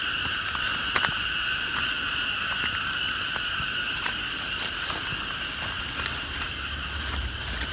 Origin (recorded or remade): recorded